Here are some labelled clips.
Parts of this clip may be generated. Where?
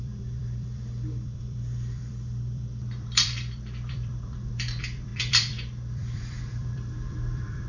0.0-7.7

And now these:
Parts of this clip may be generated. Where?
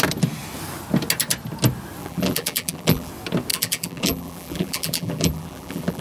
2.0-3.1; 3.5-6.0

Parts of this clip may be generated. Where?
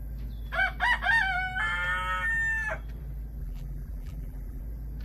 3.4-4.6